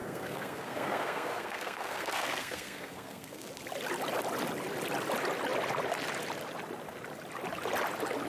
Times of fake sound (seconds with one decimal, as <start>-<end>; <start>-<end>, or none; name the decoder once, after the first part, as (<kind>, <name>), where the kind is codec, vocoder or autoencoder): 0.0-3.5 (codec, SNAC)